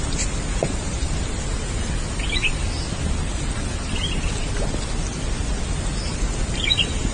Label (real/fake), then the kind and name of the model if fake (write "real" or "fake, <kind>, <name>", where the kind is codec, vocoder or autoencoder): real